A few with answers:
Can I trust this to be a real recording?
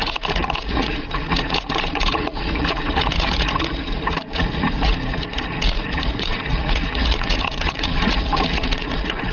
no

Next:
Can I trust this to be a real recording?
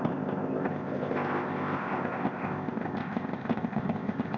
no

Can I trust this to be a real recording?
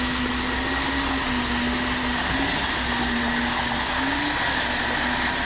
yes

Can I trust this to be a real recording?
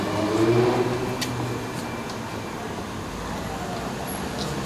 yes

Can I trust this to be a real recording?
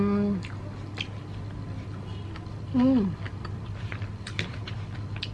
yes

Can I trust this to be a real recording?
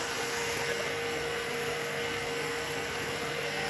no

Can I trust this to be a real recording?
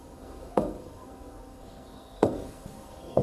no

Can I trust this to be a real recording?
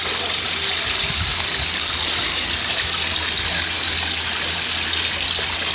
yes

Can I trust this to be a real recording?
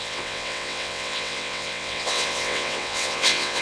no